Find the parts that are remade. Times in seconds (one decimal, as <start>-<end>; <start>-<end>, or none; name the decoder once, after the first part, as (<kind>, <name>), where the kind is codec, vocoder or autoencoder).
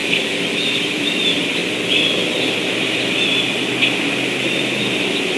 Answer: 0.9-1.6 (vocoder, BigVGAN v2); 4.8-5.4